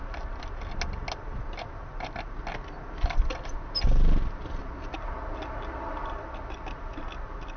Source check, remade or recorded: recorded